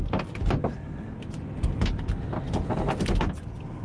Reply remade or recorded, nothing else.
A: recorded